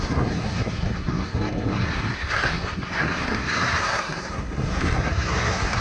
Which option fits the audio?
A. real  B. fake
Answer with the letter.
B